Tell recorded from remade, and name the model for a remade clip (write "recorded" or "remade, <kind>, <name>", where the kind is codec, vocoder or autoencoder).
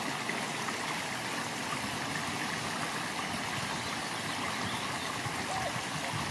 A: recorded